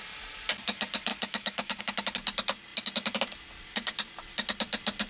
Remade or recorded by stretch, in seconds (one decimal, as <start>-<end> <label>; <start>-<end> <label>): 0.0-1.1 recorded; 1.1-1.8 remade; 1.8-5.1 recorded